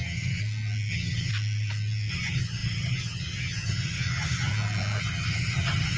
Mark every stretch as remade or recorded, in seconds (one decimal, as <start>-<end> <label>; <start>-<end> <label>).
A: 0.0-0.4 remade; 0.4-0.9 recorded; 0.9-1.3 remade; 1.3-2.1 recorded; 2.1-4.5 remade; 4.5-5.0 recorded; 5.0-6.0 remade